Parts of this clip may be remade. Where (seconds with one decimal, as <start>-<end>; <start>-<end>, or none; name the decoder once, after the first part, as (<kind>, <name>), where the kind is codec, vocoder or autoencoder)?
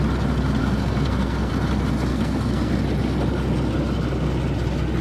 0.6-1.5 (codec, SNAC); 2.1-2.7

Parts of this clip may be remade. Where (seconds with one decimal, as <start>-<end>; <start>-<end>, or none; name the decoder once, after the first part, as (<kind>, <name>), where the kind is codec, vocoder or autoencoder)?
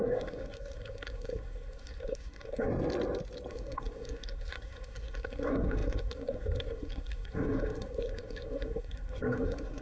0.0-2.7 (codec, SNAC); 3.5-9.8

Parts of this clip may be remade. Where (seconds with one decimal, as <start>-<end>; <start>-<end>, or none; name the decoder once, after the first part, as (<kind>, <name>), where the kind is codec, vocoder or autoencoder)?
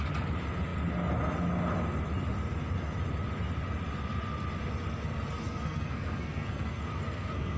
5.4-7.6 (codec, SNAC)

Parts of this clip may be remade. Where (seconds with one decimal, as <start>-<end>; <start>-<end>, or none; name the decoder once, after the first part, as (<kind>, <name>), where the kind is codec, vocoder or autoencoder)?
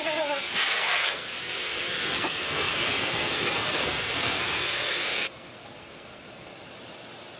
0.0-6.5 (codec, SNAC)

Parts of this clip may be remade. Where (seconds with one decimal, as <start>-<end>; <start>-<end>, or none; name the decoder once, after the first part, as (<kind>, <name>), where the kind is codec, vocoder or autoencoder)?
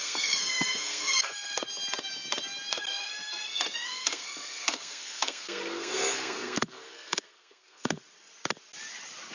0.0-1.7 (codec, SNAC); 2.7-8.0